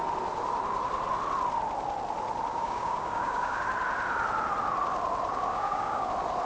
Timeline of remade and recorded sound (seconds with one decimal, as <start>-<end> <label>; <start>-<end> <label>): 0.0-2.5 recorded; 2.5-3.6 remade; 3.6-5.5 recorded; 5.5-6.1 remade; 6.1-6.5 recorded